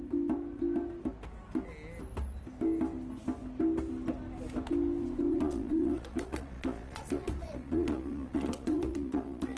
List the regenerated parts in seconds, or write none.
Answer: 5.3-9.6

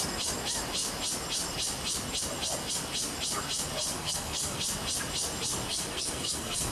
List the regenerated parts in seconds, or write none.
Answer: 3.9-4.6; 5.7-6.7

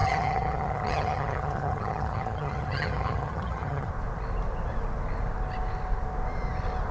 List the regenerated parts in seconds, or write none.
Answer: 0.0-3.9

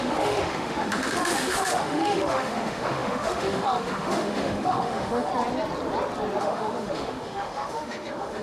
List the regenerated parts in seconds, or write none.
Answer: 0.0-5.3; 6.4-8.4

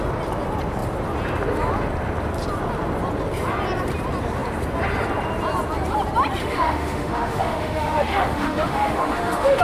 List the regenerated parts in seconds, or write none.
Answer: 6.4-9.6

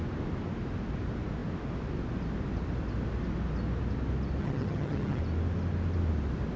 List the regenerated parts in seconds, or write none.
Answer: 4.4-5.2